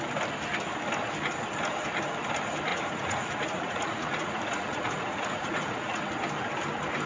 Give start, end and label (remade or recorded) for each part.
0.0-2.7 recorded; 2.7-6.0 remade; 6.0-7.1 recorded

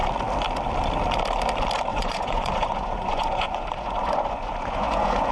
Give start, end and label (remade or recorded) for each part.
0.0-1.9 recorded; 1.9-5.3 remade